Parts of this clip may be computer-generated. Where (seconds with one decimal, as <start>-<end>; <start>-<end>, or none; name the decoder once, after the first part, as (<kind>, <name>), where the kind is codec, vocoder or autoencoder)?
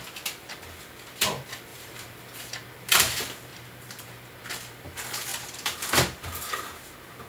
1.7-3.1 (vocoder, BigVGAN v2); 3.5-4.4